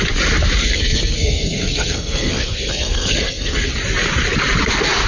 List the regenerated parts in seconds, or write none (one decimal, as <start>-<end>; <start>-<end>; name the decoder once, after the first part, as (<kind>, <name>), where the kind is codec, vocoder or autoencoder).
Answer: 0.6-3.7 (codec, SNAC)